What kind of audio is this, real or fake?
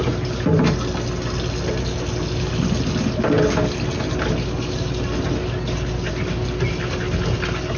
real